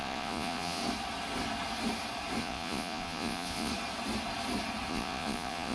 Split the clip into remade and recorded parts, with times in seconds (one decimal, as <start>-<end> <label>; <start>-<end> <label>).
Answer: 0.0-0.8 remade; 0.8-2.4 recorded; 2.4-3.7 remade; 3.7-4.9 recorded; 4.9-5.7 remade